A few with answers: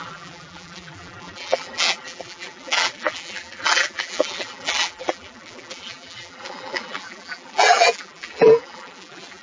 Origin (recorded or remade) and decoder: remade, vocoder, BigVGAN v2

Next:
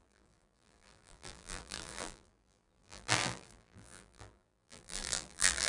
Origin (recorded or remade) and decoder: remade, vocoder, BigVGAN v2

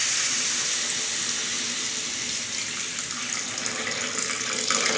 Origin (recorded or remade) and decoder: recorded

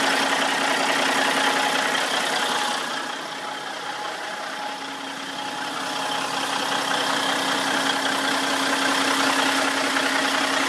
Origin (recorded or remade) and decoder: recorded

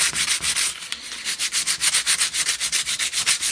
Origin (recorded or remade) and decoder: remade, vocoder, BigVGAN v2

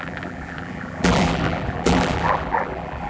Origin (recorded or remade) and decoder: remade, vocoder, BigVGAN v2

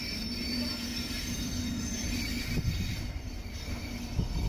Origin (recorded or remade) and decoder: recorded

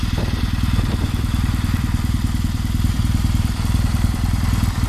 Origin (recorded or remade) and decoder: remade, vocoder, BigVGAN v2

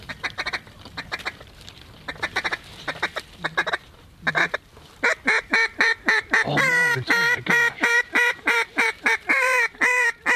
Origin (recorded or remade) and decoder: remade, vocoder, BigVGAN v2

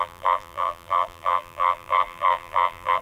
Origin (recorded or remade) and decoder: remade, vocoder, BigVGAN v2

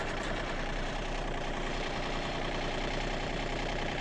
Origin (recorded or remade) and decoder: remade, vocoder, BigVGAN v2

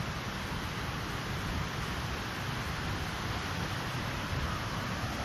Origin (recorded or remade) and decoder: recorded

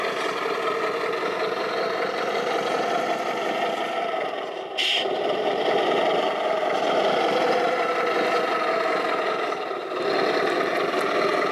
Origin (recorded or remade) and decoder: remade, vocoder, BigVGAN v2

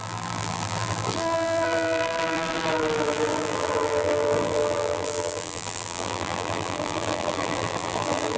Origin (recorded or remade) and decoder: remade, vocoder, BigVGAN v2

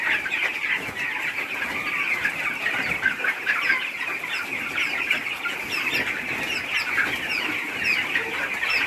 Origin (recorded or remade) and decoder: recorded